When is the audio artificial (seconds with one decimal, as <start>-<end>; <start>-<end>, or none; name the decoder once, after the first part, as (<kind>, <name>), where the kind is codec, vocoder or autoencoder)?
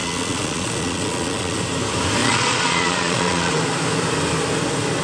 0.0-1.6 (vocoder, Vocos); 2.2-3.6